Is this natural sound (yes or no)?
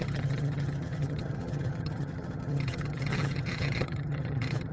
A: no